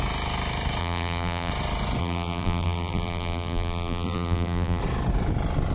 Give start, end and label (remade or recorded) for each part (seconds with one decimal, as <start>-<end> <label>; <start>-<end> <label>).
0.0-0.8 recorded; 0.8-1.5 remade; 1.5-2.0 recorded; 2.0-4.8 remade; 4.8-5.7 recorded